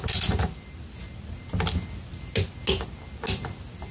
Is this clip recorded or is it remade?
recorded